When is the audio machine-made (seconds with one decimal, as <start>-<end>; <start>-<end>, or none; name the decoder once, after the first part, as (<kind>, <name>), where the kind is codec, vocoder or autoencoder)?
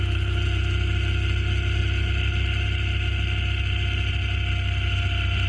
none